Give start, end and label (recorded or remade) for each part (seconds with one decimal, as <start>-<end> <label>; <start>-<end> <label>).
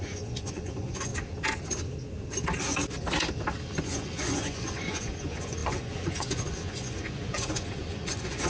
0.0-1.1 remade; 1.1-3.8 recorded; 3.8-8.5 remade